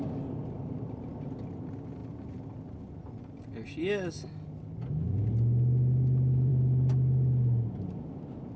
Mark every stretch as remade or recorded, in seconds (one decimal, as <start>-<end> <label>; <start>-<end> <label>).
0.0-8.6 recorded